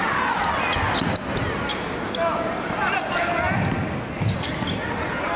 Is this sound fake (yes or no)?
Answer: no